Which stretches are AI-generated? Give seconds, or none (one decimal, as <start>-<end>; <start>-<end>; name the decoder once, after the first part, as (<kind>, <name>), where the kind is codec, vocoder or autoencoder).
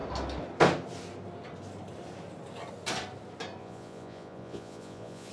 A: 3.6-5.3 (vocoder, Vocos)